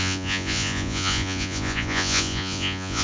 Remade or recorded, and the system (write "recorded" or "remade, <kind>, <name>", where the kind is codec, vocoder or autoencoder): remade, vocoder, Vocos